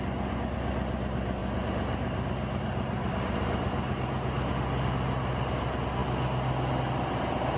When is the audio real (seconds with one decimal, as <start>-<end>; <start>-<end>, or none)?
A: 0.0-7.6

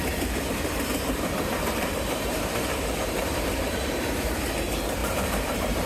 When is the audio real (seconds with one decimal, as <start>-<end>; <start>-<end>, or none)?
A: 0.0-0.9; 4.4-5.0

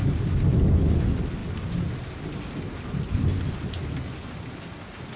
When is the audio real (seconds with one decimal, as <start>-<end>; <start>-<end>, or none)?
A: 0.0-5.2

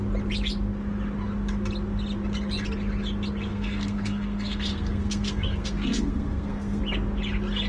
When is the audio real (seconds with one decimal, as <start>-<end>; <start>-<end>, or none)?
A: 0.0-3.5; 6.8-7.7

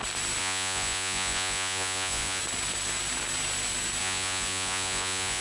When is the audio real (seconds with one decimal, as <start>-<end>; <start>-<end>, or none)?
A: 0.0-0.4; 2.4-4.0

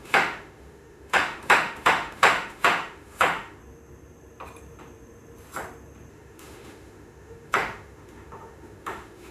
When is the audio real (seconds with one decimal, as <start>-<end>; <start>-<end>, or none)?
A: 3.6-6.1

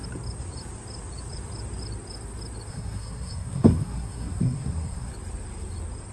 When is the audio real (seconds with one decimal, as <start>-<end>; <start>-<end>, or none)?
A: 0.0-2.7; 5.1-6.1

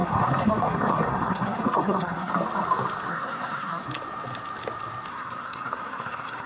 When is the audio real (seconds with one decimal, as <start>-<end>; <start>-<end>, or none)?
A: 2.3-3.1; 3.8-5.1